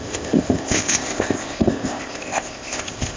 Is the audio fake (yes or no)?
yes